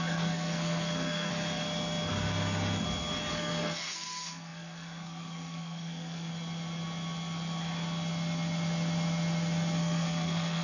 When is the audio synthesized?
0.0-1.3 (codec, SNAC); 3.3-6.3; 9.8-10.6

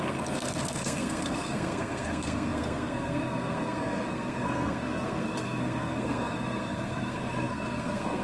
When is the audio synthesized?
0.0-8.2 (codec, SNAC)

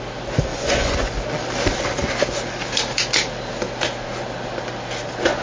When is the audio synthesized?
0.5-1.1 (vocoder, Vocos)

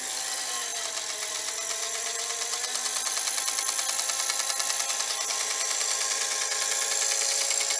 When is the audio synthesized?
none

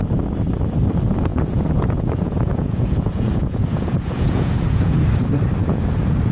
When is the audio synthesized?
1.3-5.1 (vocoder, Vocos); 5.6-6.3

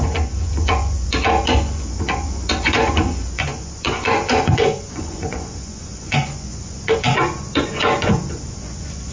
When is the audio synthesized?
0.0-9.1 (vocoder, Vocos)

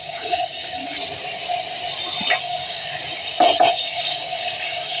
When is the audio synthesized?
0.0-0.8 (codec, DAC); 2.4-2.9; 3.7-5.0

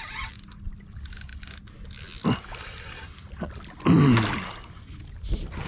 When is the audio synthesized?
none